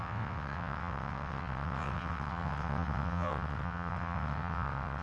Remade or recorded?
remade